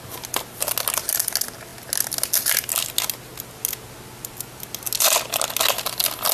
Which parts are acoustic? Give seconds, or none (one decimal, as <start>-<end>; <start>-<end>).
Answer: 0.0-6.3